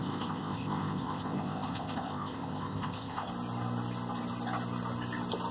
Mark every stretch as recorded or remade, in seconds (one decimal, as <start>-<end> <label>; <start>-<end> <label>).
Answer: 0.0-3.3 remade; 3.3-5.5 recorded